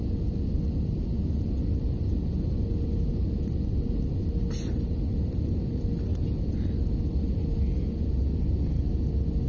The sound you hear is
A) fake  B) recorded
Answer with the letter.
B